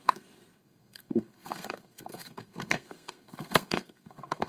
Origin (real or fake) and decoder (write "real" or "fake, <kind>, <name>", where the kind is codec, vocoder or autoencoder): fake, codec, SNAC